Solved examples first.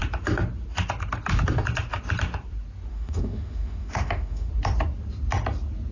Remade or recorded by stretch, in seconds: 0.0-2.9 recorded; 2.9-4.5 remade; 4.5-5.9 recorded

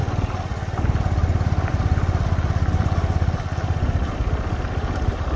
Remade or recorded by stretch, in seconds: 0.0-5.4 recorded

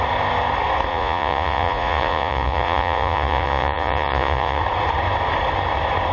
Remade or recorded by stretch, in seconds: 0.0-0.9 recorded; 0.9-4.6 remade; 4.6-6.1 recorded

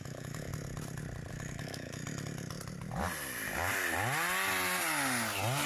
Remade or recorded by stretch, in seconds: 0.0-0.5 remade; 0.5-1.3 recorded; 1.3-2.0 remade; 2.0-5.7 recorded